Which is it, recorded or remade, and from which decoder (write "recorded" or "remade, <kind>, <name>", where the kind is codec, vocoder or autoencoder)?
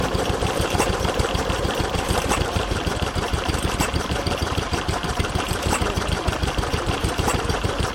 remade, vocoder, BigVGAN v2